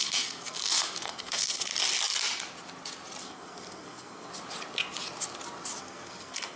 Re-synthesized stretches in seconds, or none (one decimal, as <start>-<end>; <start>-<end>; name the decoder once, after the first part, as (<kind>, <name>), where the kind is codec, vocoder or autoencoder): 0.0-1.7 (codec, SNAC); 3.2-4.3; 5.8-6.6